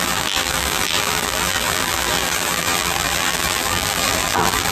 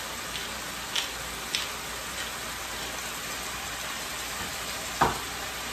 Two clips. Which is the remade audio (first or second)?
first